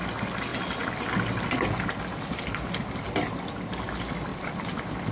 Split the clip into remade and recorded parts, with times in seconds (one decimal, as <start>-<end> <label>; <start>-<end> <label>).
0.0-5.1 recorded